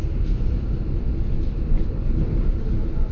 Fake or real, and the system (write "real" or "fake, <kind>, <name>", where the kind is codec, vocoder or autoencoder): real